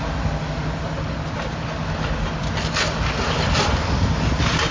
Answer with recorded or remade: recorded